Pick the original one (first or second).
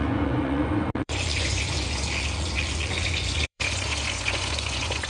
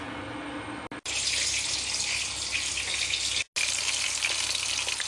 second